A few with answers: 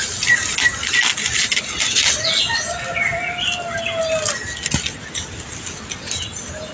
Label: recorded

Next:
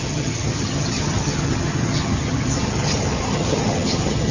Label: remade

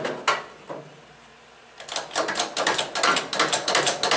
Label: recorded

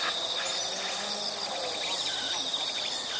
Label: recorded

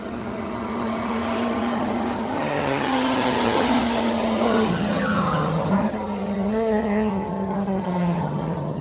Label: remade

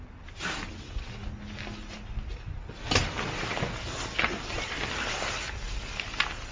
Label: recorded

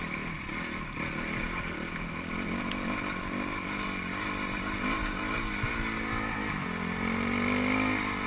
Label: recorded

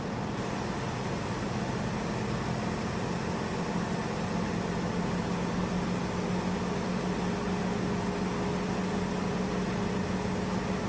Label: recorded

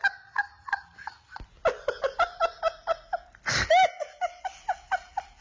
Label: recorded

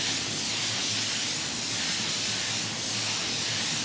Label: recorded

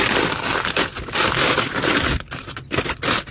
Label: recorded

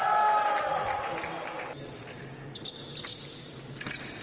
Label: recorded